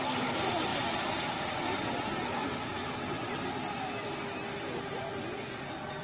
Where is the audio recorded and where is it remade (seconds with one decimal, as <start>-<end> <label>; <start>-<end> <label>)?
0.0-6.0 recorded